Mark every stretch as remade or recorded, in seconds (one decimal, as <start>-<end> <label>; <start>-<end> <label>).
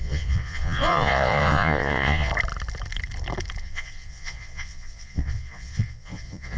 0.0-2.3 remade; 2.3-3.6 recorded; 3.6-6.6 remade